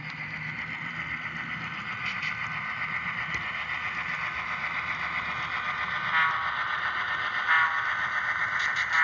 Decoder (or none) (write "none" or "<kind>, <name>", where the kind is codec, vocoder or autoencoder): none